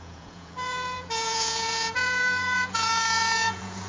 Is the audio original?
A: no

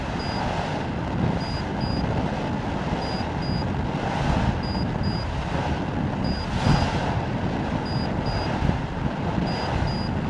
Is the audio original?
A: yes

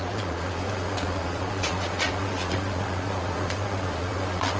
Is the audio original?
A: no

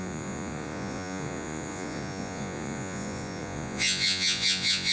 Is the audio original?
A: no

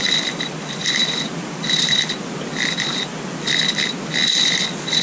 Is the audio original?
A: yes